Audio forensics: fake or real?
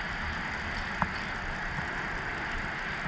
real